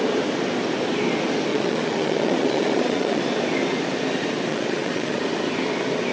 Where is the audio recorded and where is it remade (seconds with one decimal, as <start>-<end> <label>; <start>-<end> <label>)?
0.0-1.5 recorded; 1.5-3.2 remade; 3.2-4.5 recorded; 4.5-5.2 remade; 5.2-6.1 recorded

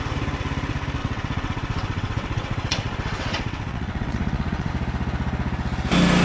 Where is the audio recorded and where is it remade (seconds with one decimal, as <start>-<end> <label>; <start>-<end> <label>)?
0.0-1.0 recorded; 1.0-4.7 remade; 4.7-6.2 recorded